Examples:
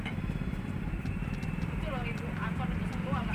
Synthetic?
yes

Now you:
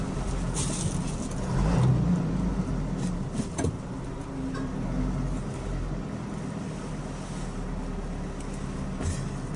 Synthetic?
no